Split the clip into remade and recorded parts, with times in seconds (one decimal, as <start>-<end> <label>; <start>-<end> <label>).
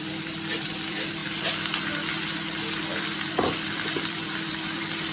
0.0-1.2 remade; 1.2-3.0 recorded; 3.0-5.1 remade